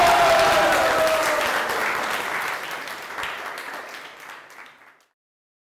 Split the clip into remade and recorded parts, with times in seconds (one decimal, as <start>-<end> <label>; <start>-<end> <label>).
0.0-5.6 recorded